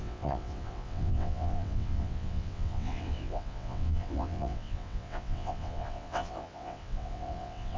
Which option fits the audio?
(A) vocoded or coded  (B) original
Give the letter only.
A